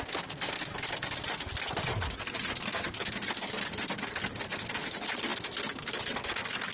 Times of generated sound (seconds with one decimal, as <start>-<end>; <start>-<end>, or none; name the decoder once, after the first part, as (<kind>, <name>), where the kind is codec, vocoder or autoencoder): none